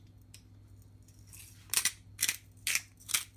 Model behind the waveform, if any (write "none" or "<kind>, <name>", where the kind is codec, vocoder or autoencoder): none